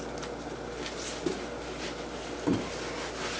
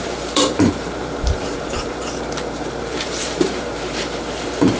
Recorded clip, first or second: first